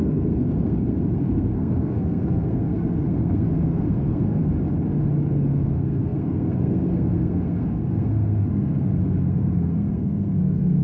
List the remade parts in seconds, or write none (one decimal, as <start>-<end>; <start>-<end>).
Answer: 0.0-4.4; 5.3-10.8